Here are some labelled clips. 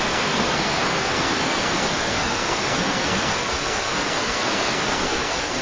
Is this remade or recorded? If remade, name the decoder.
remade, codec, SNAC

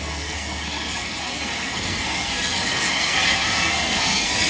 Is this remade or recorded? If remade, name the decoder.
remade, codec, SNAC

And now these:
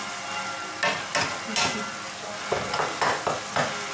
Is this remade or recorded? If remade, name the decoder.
recorded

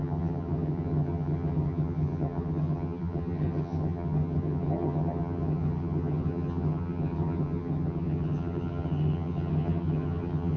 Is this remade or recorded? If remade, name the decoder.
remade, vocoder, HiFi-GAN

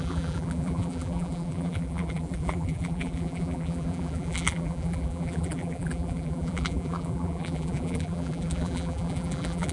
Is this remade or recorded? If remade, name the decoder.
remade, vocoder, BigVGAN v2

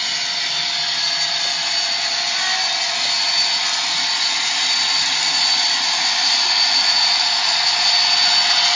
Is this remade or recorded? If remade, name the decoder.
recorded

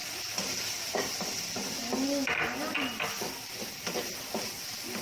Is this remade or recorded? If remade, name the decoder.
recorded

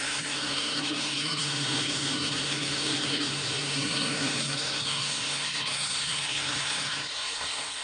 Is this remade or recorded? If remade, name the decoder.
remade, codec, SNAC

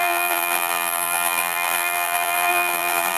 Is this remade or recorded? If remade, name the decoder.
remade, vocoder, BigVGAN v2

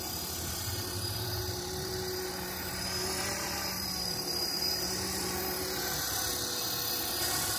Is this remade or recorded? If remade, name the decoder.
remade, vocoder, BigVGAN v2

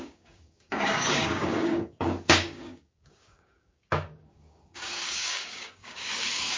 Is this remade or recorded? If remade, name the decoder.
remade, codec, DAC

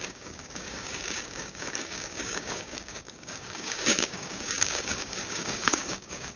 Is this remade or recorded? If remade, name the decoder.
remade, codec, DAC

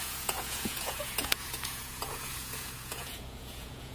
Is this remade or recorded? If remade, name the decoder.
remade, vocoder, Vocos